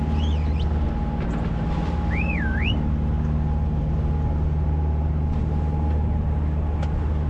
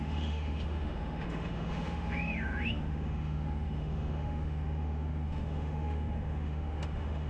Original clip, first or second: first